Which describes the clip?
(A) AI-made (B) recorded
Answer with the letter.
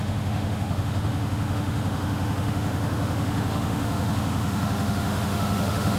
A